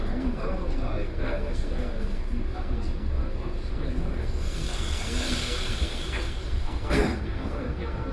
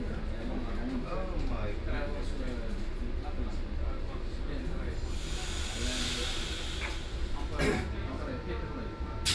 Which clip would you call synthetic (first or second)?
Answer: first